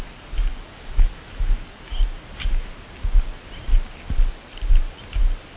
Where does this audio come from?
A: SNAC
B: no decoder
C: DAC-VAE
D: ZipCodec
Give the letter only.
B